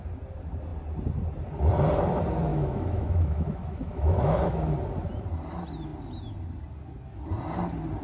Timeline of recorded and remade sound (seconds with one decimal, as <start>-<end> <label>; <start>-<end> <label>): 0.0-2.5 recorded; 2.5-4.7 remade; 4.7-8.0 recorded